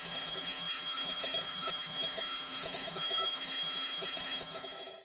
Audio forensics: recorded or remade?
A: remade